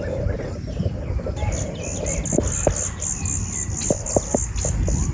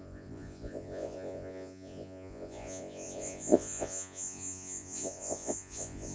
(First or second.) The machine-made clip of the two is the second